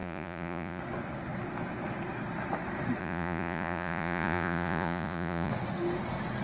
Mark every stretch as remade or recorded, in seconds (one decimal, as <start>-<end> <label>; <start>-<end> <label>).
0.0-0.8 remade; 0.8-3.0 recorded; 3.0-5.5 remade; 5.5-6.4 recorded